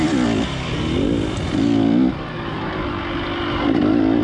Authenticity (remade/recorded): recorded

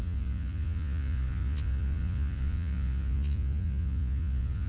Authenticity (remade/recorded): remade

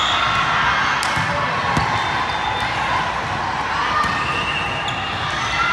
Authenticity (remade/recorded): recorded